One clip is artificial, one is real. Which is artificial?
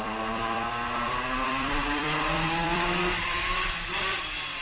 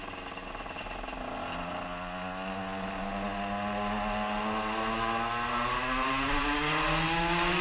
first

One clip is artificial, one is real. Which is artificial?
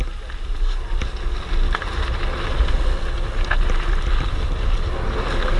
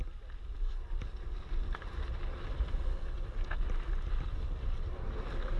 second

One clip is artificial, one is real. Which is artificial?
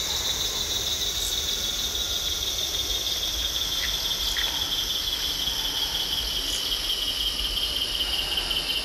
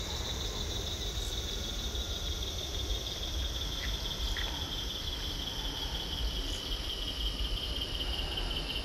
second